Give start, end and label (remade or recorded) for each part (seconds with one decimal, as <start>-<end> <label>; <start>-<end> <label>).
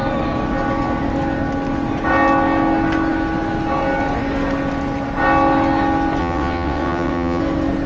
0.0-6.2 recorded; 6.2-7.4 remade; 7.4-7.9 recorded